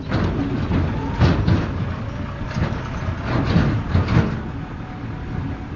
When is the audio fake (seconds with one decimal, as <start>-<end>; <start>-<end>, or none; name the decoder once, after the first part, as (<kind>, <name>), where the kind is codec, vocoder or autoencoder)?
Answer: none